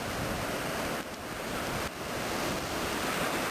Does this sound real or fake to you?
real